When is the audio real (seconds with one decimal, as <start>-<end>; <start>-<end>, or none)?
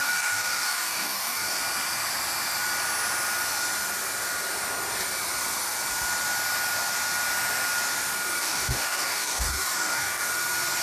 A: 1.6-8.4; 10.3-10.8